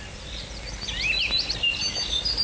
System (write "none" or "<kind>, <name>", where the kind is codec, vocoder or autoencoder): none